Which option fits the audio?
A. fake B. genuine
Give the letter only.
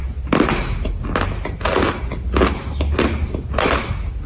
B